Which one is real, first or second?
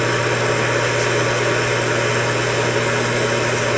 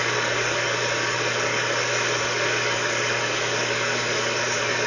first